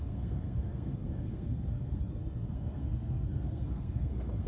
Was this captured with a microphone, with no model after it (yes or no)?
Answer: no